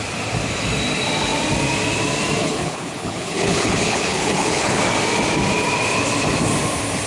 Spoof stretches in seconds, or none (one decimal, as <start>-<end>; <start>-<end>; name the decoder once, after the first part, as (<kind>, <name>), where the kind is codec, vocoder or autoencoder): 2.4-4.8 (codec, HILCodec)